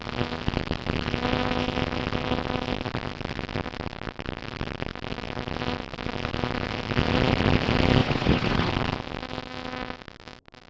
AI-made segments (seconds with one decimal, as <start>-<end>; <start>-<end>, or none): 8.0-8.7